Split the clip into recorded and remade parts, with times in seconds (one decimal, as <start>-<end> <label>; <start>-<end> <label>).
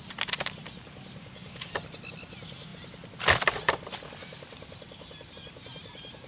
0.0-1.2 recorded; 1.2-1.7 remade; 1.7-6.3 recorded